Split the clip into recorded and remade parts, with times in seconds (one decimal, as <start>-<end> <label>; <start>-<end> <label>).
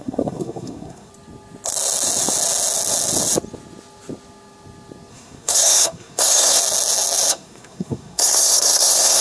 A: 0.0-1.1 remade; 1.1-5.1 recorded; 5.1-6.6 remade; 6.6-7.3 recorded; 7.3-9.2 remade